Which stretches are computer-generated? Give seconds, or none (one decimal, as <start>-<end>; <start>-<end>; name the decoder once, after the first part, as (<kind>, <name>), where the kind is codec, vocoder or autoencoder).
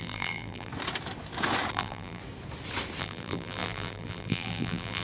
0.0-0.7 (vocoder, BigVGAN v2); 1.7-2.2; 3.0-5.0